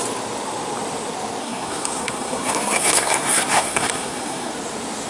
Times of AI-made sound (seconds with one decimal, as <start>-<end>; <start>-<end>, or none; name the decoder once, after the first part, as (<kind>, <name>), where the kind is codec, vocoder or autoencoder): 1.4-4.5 (codec, SNAC)